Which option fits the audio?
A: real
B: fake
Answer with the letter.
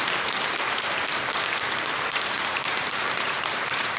B